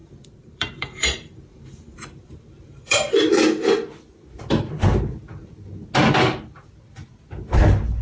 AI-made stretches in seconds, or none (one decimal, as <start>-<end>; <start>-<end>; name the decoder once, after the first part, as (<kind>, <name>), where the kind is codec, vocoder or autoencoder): 0.0-3.3 (vocoder, BigVGAN v2)